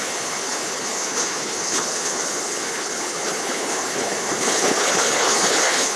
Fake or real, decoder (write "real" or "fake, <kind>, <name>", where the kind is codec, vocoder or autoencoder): fake, codec, HILCodec